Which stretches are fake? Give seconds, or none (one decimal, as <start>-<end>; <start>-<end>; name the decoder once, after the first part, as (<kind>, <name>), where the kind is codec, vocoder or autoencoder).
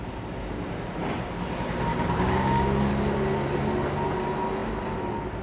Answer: 1.9-2.9 (codec, DAC)